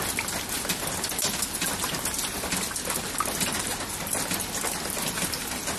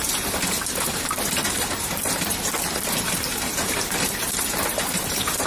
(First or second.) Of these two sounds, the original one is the first